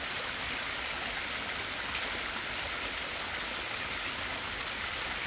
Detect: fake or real real